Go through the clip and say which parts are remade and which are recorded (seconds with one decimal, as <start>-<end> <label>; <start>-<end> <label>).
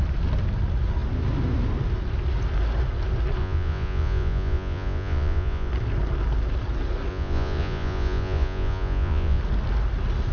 0.0-3.4 recorded; 3.4-5.7 remade; 5.7-7.1 recorded; 7.1-9.4 remade; 9.4-10.3 recorded